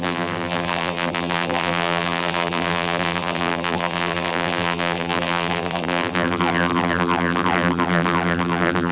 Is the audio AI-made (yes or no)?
yes